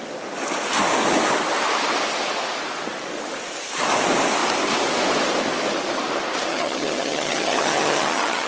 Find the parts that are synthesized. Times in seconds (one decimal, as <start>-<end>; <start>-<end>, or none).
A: 6.5-8.5